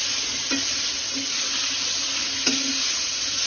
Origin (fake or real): real